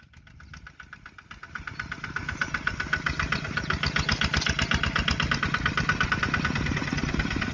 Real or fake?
real